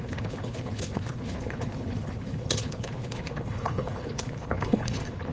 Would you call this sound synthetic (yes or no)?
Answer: yes